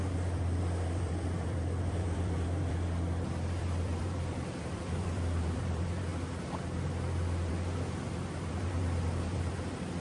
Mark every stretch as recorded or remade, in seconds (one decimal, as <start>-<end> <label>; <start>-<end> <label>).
0.0-6.1 remade; 6.1-7.5 recorded; 7.5-10.0 remade